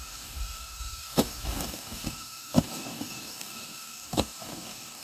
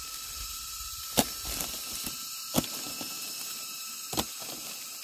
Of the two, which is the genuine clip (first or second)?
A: second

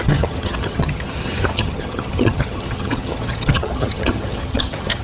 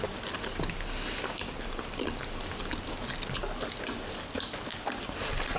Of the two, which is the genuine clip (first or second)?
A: second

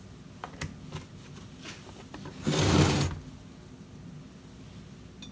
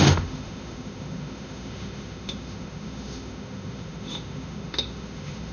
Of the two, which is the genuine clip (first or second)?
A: first